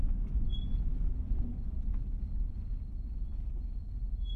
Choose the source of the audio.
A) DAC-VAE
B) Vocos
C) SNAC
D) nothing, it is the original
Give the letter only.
D